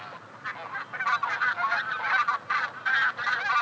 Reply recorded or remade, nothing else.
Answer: recorded